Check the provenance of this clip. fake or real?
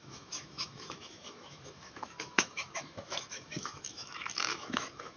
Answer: fake